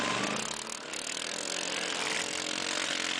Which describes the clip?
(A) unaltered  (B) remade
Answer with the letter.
A